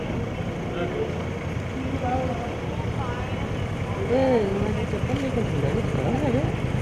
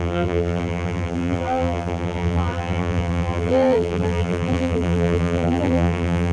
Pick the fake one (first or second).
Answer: second